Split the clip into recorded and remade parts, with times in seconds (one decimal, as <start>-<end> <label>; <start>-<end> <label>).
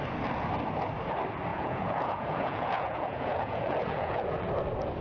0.0-1.5 recorded; 1.5-4.5 remade; 4.5-5.0 recorded